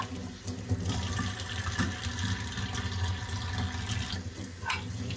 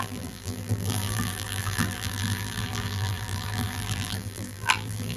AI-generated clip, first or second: second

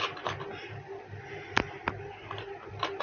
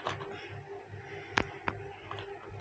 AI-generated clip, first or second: first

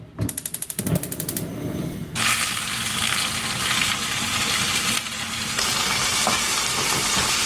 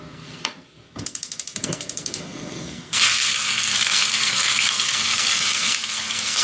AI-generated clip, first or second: second